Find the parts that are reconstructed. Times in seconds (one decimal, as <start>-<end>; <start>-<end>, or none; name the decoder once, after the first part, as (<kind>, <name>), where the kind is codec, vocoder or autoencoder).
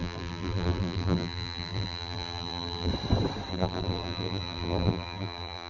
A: 0.0-2.9 (vocoder, BigVGAN v2); 3.5-5.7